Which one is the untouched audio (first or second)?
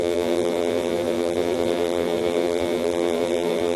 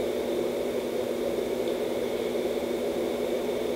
second